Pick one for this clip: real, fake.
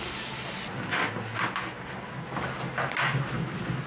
real